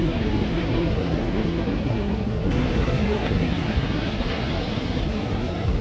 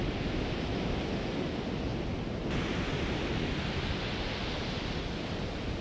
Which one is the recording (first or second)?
second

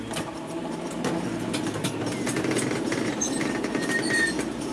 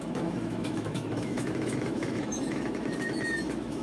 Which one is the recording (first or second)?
first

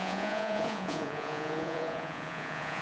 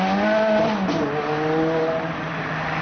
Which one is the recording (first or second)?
second